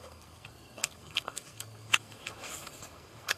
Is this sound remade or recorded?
remade